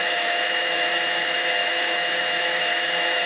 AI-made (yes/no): yes